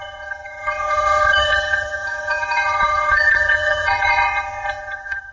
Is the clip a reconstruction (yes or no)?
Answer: yes